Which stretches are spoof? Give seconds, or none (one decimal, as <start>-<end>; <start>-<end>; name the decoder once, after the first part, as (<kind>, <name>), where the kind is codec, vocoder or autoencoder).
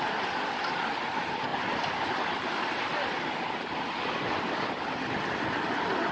none